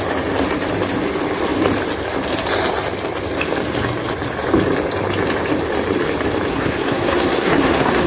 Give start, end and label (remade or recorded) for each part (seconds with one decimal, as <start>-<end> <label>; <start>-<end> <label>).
0.0-6.5 recorded; 6.5-8.1 remade